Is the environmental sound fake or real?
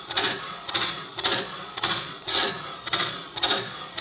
fake